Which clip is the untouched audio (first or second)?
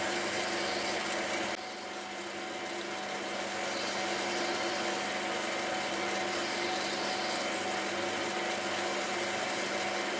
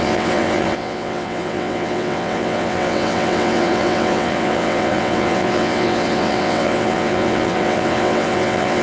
first